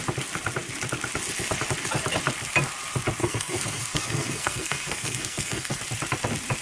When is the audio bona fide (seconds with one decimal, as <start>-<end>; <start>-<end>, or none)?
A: 0.0-3.2; 5.8-6.6